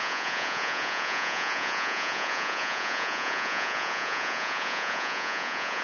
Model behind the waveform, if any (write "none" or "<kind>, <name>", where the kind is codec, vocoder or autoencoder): vocoder, Vocos